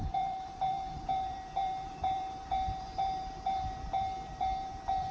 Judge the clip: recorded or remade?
remade